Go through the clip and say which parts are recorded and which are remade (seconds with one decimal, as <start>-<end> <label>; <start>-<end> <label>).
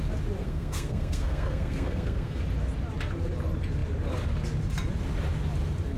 0.0-0.4 recorded; 0.4-2.4 remade; 2.4-6.0 recorded